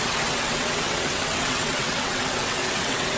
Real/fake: fake